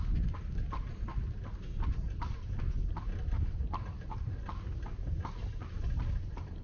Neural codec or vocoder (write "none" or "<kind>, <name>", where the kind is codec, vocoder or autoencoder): none